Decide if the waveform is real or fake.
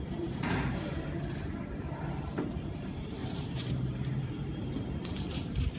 fake